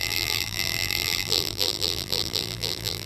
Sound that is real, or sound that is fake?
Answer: fake